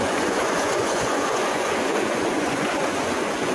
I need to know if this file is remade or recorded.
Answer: remade